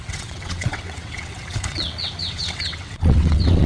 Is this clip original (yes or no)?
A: no